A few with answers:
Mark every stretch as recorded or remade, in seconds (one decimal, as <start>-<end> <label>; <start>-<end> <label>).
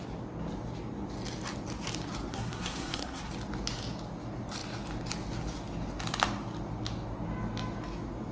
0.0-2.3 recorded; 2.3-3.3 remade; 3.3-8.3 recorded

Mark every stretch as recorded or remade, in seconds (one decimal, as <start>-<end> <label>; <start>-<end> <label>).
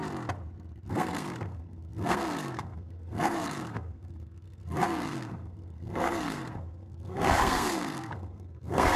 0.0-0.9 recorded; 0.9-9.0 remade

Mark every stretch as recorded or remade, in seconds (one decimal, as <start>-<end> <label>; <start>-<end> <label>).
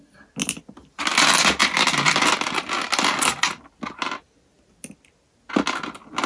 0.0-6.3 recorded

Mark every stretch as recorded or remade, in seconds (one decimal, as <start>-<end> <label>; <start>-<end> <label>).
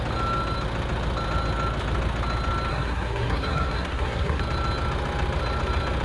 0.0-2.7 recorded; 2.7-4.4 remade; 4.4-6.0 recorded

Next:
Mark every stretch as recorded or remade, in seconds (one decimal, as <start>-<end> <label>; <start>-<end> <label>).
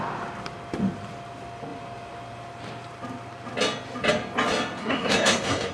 0.0-4.8 recorded; 4.8-5.7 remade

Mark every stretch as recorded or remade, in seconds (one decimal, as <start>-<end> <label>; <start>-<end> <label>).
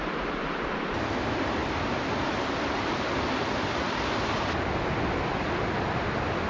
0.0-6.5 recorded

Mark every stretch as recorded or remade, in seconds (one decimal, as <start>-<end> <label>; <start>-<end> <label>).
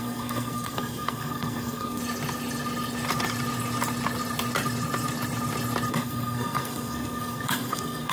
0.0-2.0 remade; 2.0-5.9 recorded; 5.9-8.1 remade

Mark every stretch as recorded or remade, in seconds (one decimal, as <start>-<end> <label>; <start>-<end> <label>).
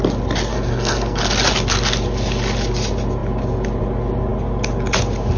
0.0-0.5 recorded; 0.5-1.2 remade; 1.2-5.4 recorded